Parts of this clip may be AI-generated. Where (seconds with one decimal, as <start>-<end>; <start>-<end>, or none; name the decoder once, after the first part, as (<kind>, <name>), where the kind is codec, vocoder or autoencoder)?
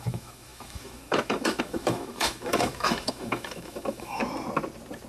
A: 0.0-4.2 (autoencoder, DAC-VAE)